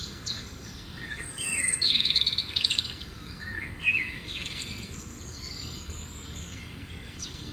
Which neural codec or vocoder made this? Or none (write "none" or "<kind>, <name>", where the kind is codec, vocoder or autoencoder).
codec, SNAC